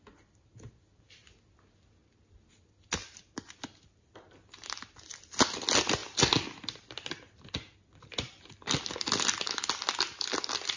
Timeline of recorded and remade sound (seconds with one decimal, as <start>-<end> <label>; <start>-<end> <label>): 0.0-3.0 recorded; 3.0-4.2 remade; 4.2-6.0 recorded; 6.0-9.2 remade; 9.2-10.8 recorded